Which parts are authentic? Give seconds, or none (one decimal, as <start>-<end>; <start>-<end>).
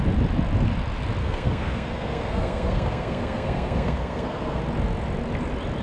0.0-1.2; 4.6-5.8